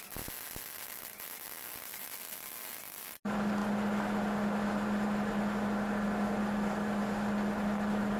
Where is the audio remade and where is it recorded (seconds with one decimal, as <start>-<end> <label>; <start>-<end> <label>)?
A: 0.0-8.2 recorded